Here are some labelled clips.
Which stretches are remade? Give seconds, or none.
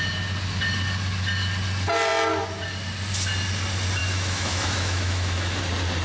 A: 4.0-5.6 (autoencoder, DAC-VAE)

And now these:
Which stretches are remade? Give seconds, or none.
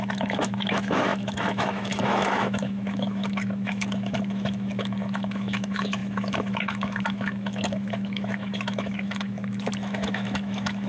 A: 0.0-10.9 (autoencoder, DAC-VAE)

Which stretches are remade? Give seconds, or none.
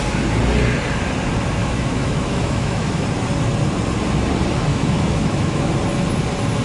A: 1.6-3.0 (autoencoder, DAC-VAE); 4.7-5.7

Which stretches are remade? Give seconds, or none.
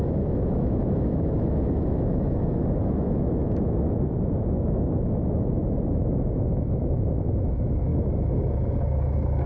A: 0.0-7.9 (autoencoder, DAC-VAE)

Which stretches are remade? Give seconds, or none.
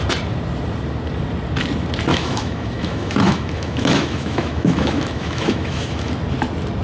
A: 2.1-6.1 (autoencoder, DAC-VAE)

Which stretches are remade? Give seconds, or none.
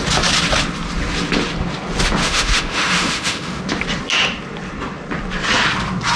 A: 2.2-3.6 (autoencoder, DAC-VAE)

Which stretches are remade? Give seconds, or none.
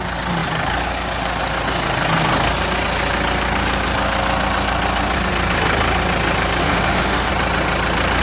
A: 6.6-7.3 (autoencoder, DAC-VAE)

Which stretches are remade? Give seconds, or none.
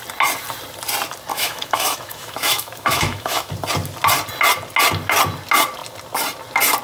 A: 1.3-3.5 (autoencoder, DAC-VAE)